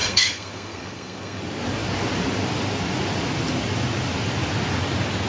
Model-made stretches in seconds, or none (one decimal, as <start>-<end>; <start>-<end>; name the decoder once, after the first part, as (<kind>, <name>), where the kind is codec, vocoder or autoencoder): 0.0-1.4 (codec, SNAC)